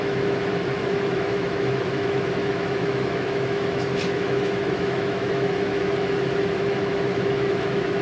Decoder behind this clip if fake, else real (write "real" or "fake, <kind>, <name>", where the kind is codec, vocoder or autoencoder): fake, autoencoder, DAC-VAE